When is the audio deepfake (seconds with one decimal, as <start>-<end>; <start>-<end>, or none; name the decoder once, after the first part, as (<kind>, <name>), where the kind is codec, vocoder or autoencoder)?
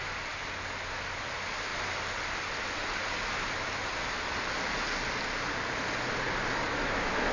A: none